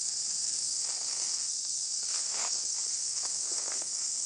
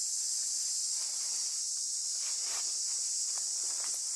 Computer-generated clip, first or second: first